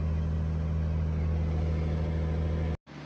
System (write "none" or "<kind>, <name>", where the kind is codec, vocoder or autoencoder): none